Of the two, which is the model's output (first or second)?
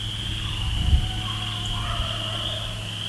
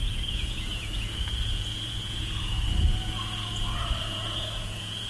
second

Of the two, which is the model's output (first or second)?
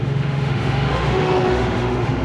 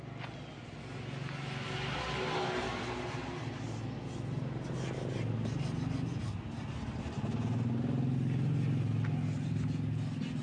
first